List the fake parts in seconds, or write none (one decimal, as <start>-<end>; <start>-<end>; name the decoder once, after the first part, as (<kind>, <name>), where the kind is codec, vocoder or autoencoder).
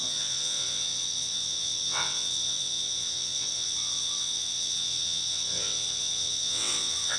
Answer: 0.0-7.2 (vocoder, WaveNeXt)